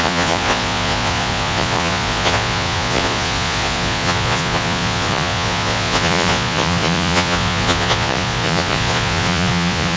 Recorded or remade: remade